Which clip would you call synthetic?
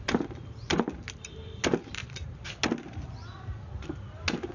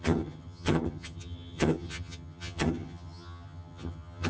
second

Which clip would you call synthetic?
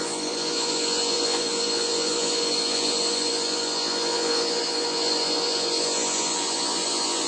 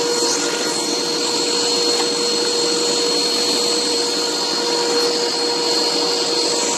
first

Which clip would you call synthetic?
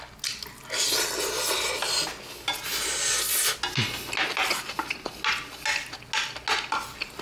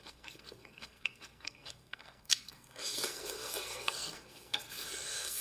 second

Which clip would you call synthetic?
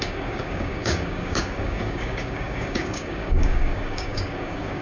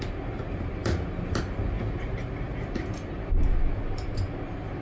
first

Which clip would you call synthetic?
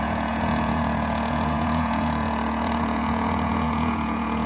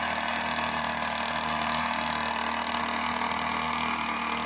first